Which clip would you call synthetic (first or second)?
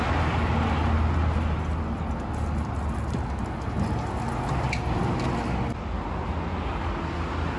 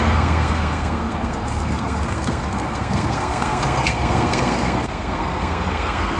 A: second